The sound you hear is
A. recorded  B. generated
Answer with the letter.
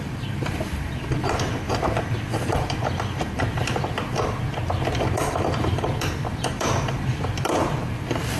B